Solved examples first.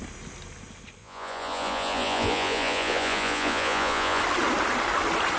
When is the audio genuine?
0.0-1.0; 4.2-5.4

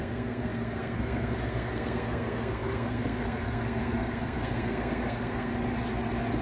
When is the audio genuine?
5.5-6.4

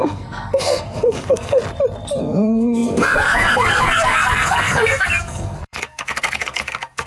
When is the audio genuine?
1.6-2.2

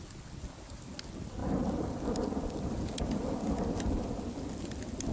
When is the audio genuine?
0.0-5.1